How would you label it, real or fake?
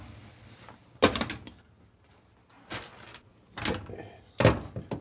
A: real